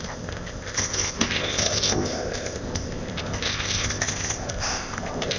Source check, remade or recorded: remade